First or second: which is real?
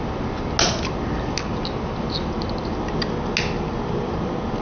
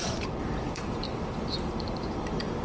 first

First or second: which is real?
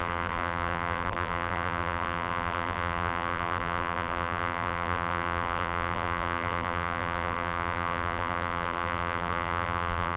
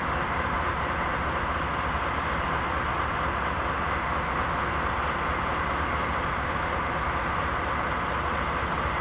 second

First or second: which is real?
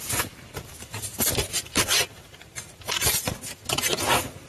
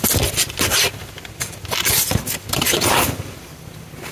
second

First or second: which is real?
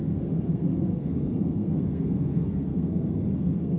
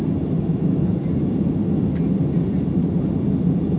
second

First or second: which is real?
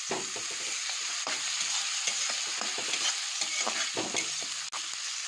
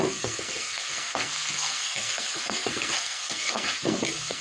first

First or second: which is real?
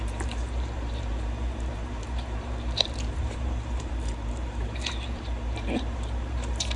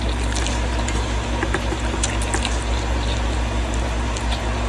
second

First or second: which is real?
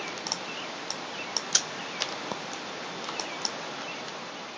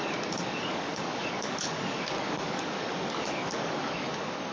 first